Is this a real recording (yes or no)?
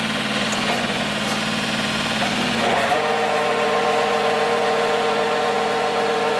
no